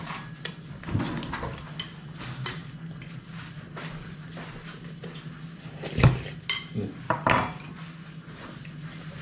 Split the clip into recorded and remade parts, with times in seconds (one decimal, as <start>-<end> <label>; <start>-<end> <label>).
0.0-9.2 recorded